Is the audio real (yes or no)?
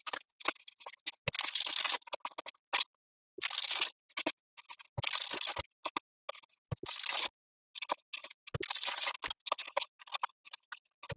yes